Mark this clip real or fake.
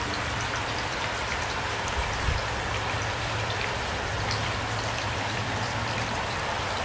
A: fake